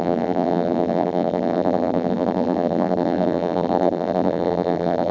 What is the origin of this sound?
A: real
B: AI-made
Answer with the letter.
B